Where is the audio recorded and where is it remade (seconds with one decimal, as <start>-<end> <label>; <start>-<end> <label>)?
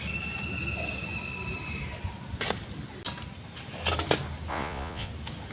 0.0-4.5 recorded; 4.5-5.1 remade; 5.1-5.5 recorded